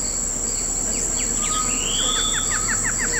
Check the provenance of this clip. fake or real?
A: real